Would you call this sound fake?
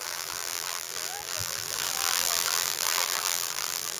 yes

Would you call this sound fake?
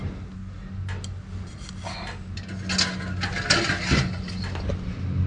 no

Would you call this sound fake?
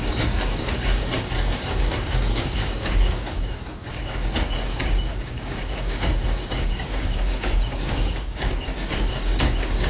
yes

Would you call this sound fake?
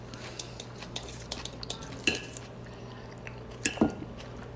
no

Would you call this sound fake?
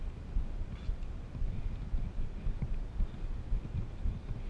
no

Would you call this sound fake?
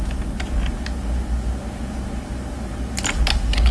no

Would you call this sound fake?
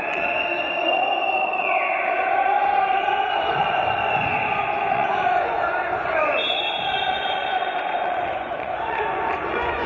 yes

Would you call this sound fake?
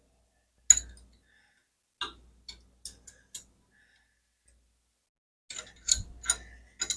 no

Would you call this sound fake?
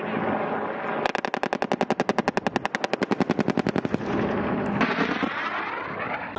no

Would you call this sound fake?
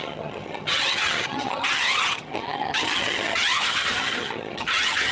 yes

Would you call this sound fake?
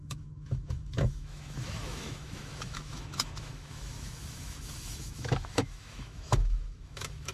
yes